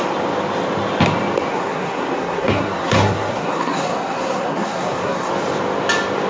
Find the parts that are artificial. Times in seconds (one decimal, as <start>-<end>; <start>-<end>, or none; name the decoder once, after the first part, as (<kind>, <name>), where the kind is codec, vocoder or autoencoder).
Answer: 1.5-5.3 (codec, SNAC)